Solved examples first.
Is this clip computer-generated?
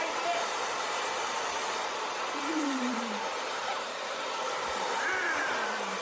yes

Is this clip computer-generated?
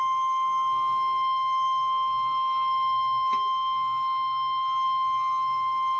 yes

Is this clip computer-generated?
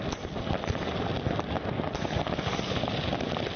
no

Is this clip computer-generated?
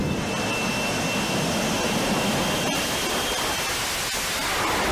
no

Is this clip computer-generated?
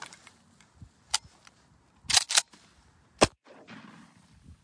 no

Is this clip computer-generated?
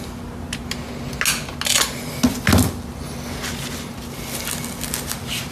no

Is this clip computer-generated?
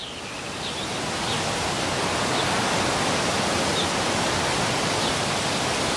no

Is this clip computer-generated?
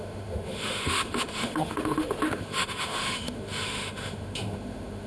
yes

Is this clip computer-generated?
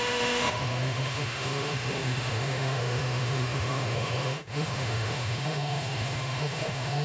yes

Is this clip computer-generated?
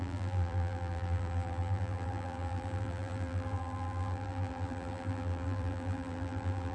yes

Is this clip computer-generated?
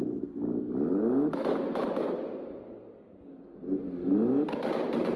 no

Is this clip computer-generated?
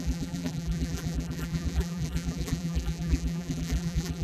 yes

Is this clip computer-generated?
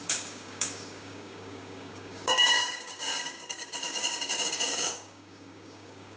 yes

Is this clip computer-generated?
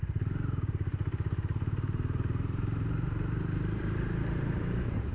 yes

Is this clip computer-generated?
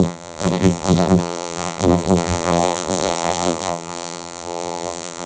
yes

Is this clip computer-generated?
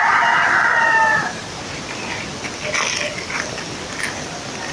no